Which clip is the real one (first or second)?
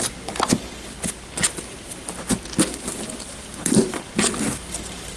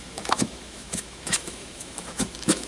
first